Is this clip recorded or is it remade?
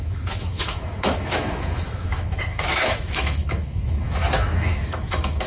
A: remade